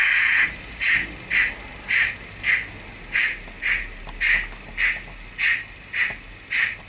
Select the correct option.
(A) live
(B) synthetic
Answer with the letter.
A